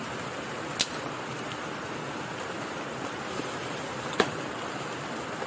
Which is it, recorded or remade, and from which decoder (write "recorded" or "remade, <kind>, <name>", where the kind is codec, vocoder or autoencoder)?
recorded